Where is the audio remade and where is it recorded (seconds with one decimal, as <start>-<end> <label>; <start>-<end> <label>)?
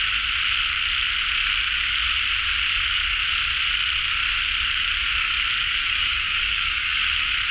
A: 0.0-5.6 recorded; 5.6-7.0 remade; 7.0-7.5 recorded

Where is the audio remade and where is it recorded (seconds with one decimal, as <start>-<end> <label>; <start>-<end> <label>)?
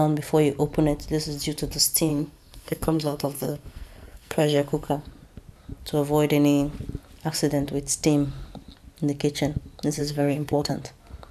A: 0.0-2.1 recorded; 2.1-5.1 remade; 5.1-10.0 recorded; 10.0-10.7 remade; 10.7-11.3 recorded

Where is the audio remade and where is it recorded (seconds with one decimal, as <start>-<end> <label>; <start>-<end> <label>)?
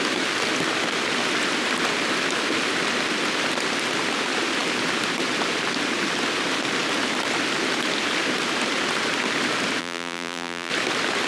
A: 0.0-9.8 recorded; 9.8-10.7 remade; 10.7-11.3 recorded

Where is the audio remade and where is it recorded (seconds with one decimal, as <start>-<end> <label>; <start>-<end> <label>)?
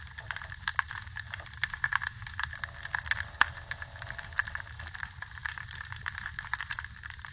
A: 0.0-0.7 remade; 0.7-3.0 recorded; 3.0-4.4 remade; 4.4-5.0 recorded; 5.0-7.3 remade